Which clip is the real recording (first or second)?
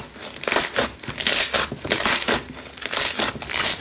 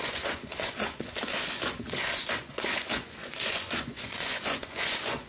first